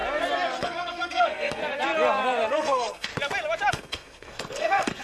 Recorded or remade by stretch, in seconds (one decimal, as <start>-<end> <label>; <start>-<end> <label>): 0.0-0.6 recorded; 0.6-1.6 remade; 1.6-2.5 recorded; 2.5-3.1 remade; 3.1-3.7 recorded; 3.7-5.0 remade

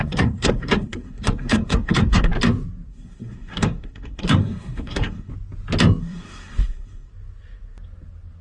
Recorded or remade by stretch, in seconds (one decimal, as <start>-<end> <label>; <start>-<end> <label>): 0.0-2.3 remade; 2.3-2.9 recorded; 2.9-5.3 remade; 5.3-6.0 recorded; 6.0-7.1 remade; 7.1-8.4 recorded

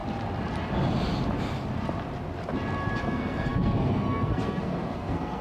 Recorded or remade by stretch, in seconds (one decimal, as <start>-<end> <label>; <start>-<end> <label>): 0.0-3.0 recorded; 3.0-5.4 remade

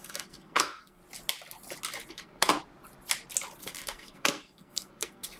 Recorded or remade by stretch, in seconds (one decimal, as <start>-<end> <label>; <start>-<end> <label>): 0.0-1.0 remade; 1.0-2.1 recorded; 2.1-2.5 remade; 2.5-3.6 recorded; 3.6-5.4 remade

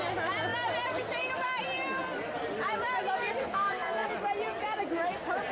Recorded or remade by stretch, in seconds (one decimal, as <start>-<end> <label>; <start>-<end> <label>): 0.0-3.4 recorded; 3.4-4.1 remade; 4.1-5.5 recorded

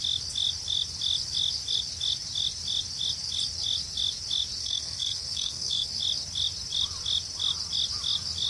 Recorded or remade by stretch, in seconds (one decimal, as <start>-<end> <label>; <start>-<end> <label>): 0.0-4.6 recorded; 4.6-5.9 remade; 5.9-8.5 recorded

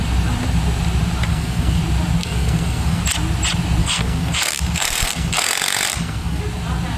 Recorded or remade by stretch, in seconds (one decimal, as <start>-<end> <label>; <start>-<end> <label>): 0.0-1.3 recorded; 1.3-1.8 remade; 1.8-2.2 recorded; 2.2-3.0 remade; 3.0-3.8 recorded; 3.8-6.4 remade; 6.4-7.0 recorded

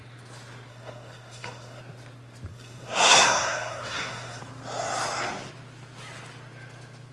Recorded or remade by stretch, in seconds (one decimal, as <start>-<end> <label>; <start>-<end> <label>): 0.0-0.7 recorded; 0.7-1.8 remade; 1.8-2.5 recorded; 2.5-4.4 remade; 4.4-7.1 recorded